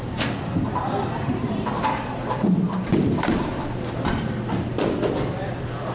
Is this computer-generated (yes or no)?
yes